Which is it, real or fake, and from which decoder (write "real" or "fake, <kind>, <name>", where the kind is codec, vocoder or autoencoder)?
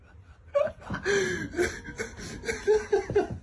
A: real